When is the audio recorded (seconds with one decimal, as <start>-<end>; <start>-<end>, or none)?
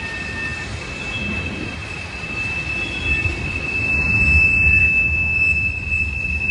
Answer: 0.0-4.8; 5.7-6.5